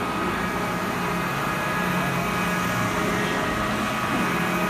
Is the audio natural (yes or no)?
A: yes